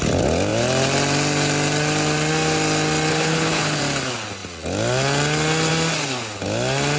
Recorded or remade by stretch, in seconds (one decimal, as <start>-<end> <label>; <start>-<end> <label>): 0.0-3.1 recorded; 3.1-3.8 remade; 3.8-7.0 recorded